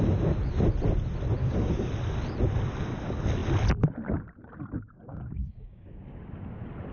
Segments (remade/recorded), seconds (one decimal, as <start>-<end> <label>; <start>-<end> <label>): 0.0-1.4 recorded; 1.4-1.9 remade; 1.9-5.4 recorded; 5.4-6.0 remade; 6.0-6.9 recorded